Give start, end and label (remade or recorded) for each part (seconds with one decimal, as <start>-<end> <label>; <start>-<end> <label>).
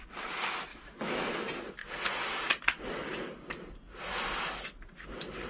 0.0-0.7 recorded; 0.7-1.3 remade; 1.3-5.5 recorded